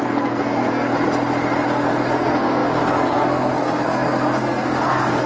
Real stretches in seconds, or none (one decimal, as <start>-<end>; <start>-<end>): 0.9-1.7